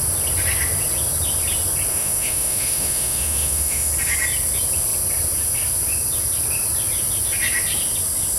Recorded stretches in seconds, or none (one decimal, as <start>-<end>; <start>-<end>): 0.0-1.9; 3.9-8.4